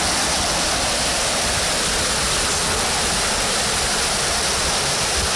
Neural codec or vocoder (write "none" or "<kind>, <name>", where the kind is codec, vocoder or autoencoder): none